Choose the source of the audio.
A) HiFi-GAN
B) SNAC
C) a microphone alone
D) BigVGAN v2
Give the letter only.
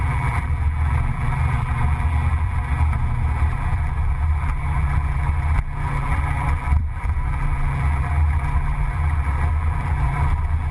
D